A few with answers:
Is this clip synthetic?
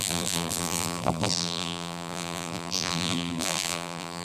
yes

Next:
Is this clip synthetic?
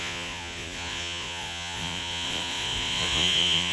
yes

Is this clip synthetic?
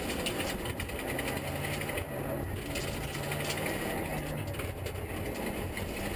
no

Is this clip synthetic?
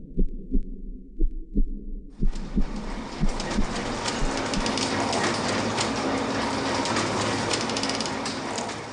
no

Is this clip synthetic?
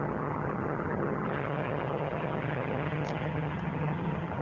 yes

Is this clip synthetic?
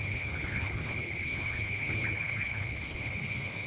yes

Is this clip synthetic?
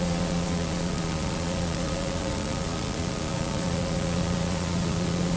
yes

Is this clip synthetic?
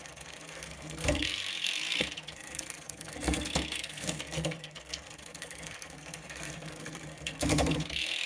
yes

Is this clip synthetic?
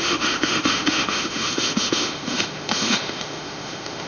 yes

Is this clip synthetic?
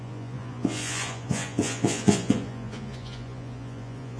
yes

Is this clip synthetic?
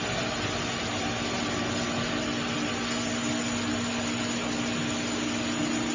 no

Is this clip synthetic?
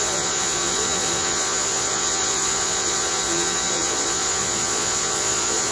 yes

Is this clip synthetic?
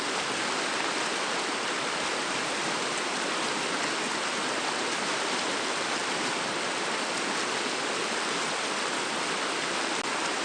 no